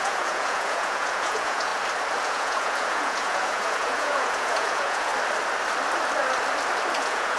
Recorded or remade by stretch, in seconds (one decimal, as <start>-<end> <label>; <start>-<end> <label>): 0.0-1.7 remade; 1.7-2.2 recorded; 2.2-5.1 remade; 5.1-7.0 recorded; 7.0-7.4 remade